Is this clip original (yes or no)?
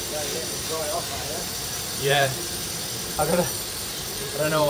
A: no